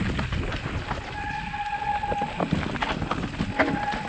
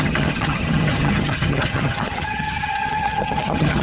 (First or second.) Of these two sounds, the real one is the first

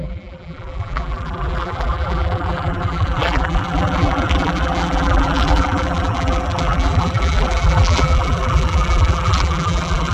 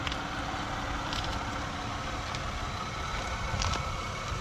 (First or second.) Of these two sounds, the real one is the second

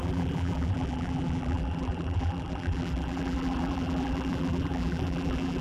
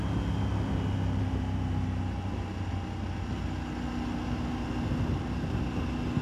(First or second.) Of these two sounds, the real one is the second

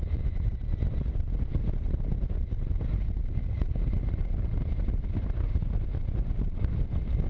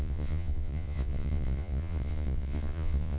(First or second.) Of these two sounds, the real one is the first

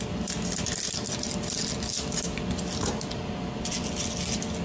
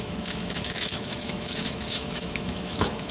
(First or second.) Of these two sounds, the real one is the first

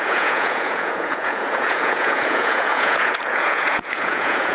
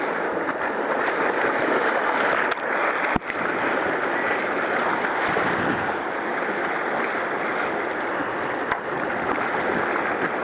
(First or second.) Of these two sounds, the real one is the second